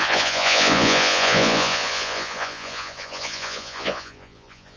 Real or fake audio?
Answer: fake